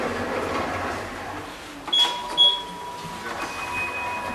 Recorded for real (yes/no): yes